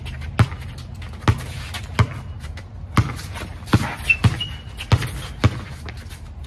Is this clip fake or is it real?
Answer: real